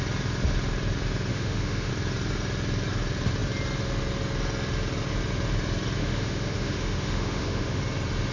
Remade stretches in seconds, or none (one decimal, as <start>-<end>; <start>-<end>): 1.3-1.9; 6.0-7.8